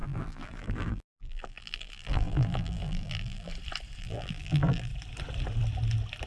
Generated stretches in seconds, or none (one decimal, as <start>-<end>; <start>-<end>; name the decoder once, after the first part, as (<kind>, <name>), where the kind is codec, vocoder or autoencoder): 0.0-3.5 (vocoder, BigVGAN v2); 4.0-4.9